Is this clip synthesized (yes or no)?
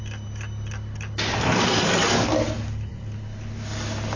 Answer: no